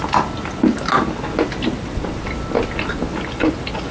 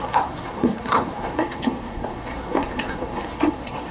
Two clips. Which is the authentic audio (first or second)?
first